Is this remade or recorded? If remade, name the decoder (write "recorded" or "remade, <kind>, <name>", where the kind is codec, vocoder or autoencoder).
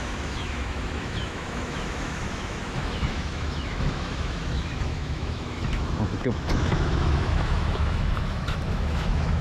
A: remade, autoencoder, DAC-VAE